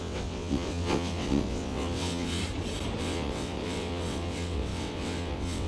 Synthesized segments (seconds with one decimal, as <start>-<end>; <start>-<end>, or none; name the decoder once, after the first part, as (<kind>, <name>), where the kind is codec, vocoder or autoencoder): 0.0-2.4 (vocoder, WaveNeXt); 3.0-5.7